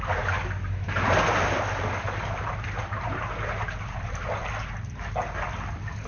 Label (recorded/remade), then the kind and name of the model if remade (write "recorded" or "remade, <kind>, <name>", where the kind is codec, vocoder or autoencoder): recorded